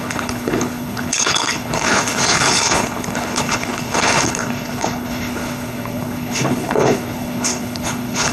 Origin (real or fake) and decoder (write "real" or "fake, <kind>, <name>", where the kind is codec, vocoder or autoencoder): fake, codec, HILCodec